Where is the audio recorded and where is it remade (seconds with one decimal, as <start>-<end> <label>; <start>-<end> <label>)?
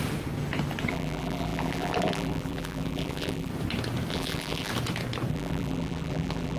0.0-0.9 recorded; 0.9-3.5 remade; 3.5-4.1 recorded; 4.1-4.7 remade; 4.7-5.3 recorded; 5.3-6.6 remade